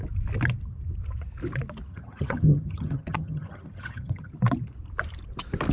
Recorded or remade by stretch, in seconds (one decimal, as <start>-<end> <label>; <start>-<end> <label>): 0.0-1.9 recorded; 1.9-4.3 remade; 4.3-5.7 recorded